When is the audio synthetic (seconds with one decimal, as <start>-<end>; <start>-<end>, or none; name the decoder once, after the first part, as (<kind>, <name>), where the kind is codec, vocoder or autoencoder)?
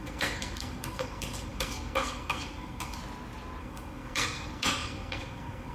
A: 0.0-3.0 (codec, SNAC); 3.6-5.7